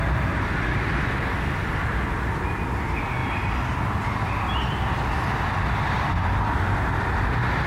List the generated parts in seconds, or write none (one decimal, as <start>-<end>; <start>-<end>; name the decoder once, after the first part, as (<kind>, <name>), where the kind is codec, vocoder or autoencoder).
none

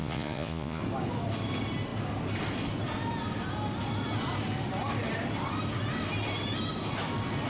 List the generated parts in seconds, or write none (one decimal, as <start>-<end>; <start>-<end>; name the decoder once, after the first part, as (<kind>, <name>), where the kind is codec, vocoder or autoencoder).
0.0-0.8 (vocoder, Vocos)